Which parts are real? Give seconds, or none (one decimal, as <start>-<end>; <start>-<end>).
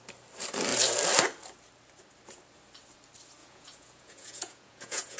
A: 0.0-3.4